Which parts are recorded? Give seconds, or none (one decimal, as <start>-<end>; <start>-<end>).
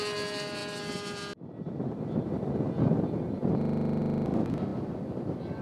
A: 0.0-5.6